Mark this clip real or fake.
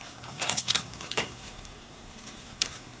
fake